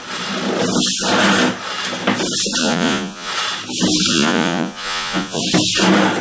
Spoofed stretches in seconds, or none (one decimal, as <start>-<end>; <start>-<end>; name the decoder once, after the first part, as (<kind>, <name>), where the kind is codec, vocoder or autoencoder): 2.6-3.3 (vocoder, Vocos); 4.1-5.4